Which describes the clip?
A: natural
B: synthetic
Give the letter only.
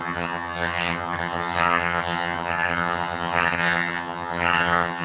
B